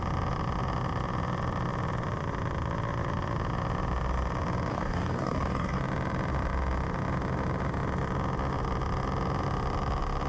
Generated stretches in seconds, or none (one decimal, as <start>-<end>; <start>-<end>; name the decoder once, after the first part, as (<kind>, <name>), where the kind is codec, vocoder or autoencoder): 4.7-5.8 (codec, DAC)